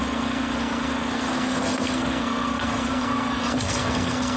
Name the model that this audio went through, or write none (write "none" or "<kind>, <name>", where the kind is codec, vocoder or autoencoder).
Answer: codec, SNAC